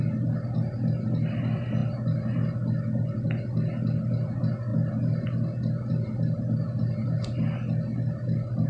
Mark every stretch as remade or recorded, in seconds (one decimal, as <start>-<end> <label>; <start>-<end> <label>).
0.0-8.7 recorded